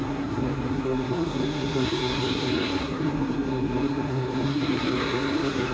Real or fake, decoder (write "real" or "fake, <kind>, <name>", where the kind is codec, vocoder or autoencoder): fake, codec, SNAC